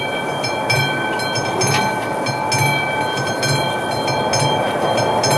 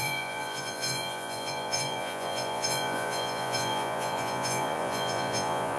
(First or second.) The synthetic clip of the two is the second